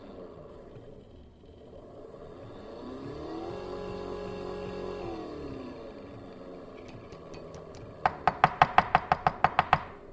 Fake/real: real